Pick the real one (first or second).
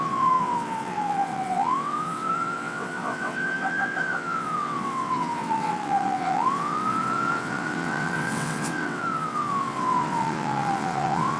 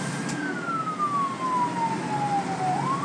second